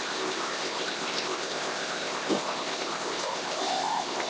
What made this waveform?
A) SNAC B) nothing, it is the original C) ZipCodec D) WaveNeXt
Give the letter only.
C